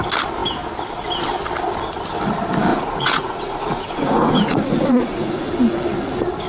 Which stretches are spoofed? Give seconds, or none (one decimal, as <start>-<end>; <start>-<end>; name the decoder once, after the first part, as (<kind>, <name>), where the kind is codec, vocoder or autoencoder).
2.7-5.5 (vocoder, Vocos)